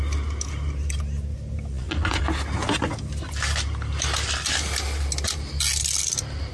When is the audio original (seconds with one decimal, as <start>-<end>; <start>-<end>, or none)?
0.0-1.7; 2.2-6.5